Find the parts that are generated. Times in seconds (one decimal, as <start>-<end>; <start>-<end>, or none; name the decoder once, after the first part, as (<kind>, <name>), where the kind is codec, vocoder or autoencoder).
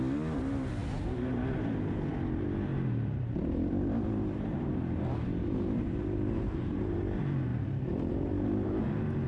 2.7-4.7 (vocoder, BigVGAN v2); 5.4-7.0; 7.5-8.8